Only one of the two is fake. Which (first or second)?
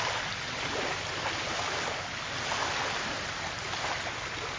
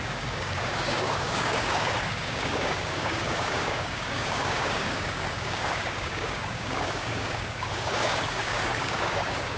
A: second